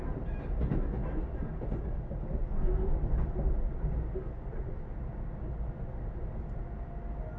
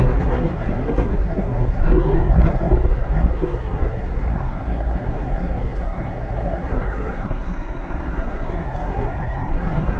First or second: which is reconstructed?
second